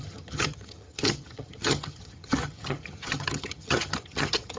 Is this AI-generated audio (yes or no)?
yes